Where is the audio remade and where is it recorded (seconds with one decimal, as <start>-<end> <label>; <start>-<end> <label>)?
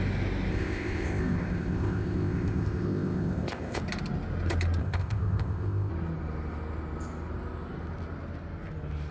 0.0-0.5 recorded; 0.5-3.8 remade; 3.8-4.8 recorded; 4.8-5.9 remade; 5.9-9.1 recorded